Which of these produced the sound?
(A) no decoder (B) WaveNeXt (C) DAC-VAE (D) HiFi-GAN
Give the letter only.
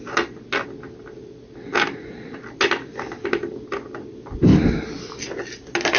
A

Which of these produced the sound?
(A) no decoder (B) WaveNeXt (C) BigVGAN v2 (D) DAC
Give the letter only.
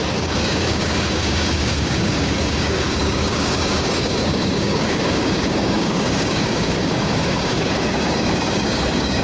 D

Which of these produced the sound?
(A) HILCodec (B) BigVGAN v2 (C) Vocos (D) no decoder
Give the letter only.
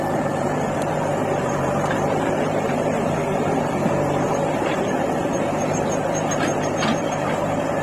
B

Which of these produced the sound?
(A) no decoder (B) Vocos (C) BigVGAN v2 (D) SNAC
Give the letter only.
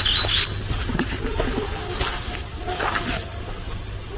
A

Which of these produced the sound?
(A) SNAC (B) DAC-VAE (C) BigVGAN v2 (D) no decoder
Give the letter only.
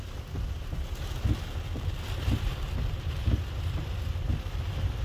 D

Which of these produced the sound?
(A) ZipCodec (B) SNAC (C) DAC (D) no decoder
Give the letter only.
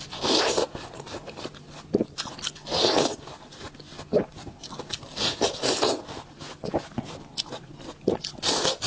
D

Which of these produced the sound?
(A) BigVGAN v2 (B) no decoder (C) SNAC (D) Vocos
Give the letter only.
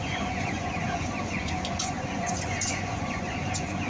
D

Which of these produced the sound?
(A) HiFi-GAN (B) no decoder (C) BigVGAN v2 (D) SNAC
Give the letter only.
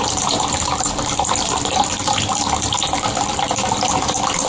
C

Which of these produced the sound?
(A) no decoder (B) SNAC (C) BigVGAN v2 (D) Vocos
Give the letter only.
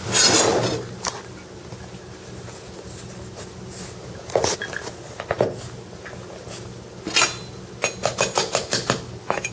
A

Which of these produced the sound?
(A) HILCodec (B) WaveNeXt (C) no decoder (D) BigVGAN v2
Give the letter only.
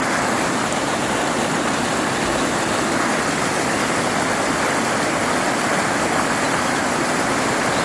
C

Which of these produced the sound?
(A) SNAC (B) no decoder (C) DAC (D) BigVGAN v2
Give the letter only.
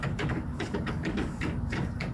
C